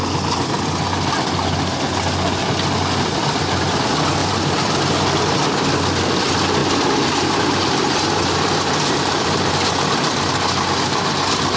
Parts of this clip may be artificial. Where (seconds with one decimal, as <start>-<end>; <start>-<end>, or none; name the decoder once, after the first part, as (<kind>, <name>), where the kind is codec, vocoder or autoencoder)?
4.2-4.7 (vocoder, BigVGAN v2); 6.6-9.5